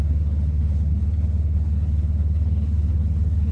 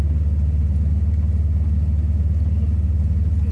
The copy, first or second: first